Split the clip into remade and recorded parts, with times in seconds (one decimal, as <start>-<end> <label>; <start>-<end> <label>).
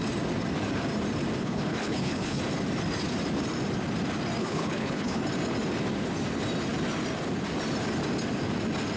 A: 0.0-1.4 recorded; 1.4-2.4 remade; 2.4-4.4 recorded; 4.4-5.2 remade; 5.2-9.0 recorded